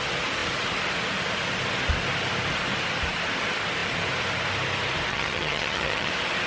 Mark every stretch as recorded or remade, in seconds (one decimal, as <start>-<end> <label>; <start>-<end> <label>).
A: 0.0-5.1 recorded; 5.1-6.1 remade; 6.1-6.5 recorded